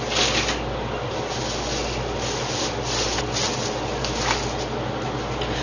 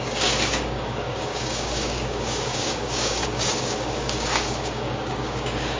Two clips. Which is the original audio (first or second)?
first